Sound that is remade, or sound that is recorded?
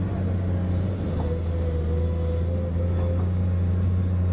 recorded